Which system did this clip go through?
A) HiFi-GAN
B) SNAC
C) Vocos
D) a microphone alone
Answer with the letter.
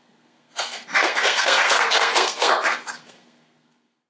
B